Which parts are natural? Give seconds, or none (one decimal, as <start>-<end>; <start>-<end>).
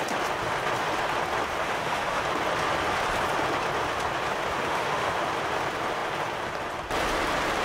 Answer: 0.0-1.6; 2.2-4.6; 5.1-7.6